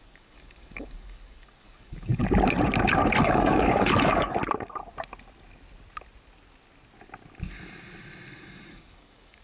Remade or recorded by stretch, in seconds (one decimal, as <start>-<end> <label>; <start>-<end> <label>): 0.0-2.2 remade; 2.2-3.2 recorded; 3.2-4.4 remade; 4.4-8.7 recorded; 8.7-9.4 remade